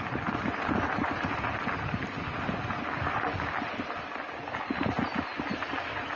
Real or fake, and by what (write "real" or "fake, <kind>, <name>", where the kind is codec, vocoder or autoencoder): real